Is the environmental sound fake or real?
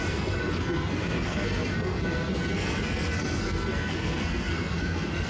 fake